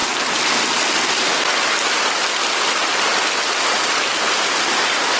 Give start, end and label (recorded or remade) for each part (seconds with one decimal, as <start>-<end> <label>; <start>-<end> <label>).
0.0-2.7 recorded; 2.7-3.1 remade; 3.1-4.3 recorded; 4.3-5.2 remade